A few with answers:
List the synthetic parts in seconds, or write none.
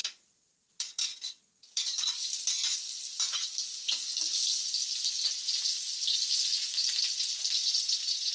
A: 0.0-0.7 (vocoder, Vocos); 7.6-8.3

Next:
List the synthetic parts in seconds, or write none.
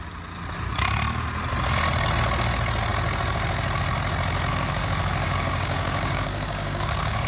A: 4.5-7.3 (codec, DAC)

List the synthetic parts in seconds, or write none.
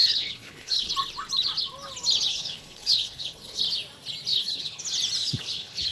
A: 0.0-0.9 (codec, HILCodec); 2.3-3.6; 4.3-4.8; 5.2-5.9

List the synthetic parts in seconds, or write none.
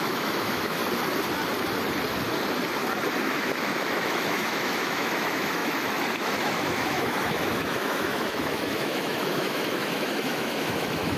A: 0.0-0.8 (autoencoder, DAC-VAE); 3.2-11.2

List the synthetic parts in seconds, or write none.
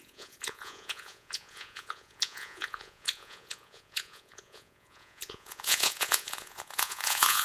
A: 0.0-7.4 (vocoder, Vocos)